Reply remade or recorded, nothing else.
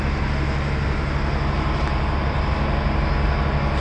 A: recorded